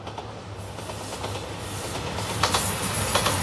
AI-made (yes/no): no